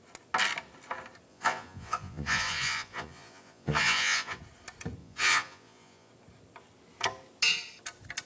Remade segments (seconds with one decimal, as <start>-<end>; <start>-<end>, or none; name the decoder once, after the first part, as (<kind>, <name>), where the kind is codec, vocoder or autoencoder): 1.3-4.4 (vocoder, Vocos); 5.0-6.1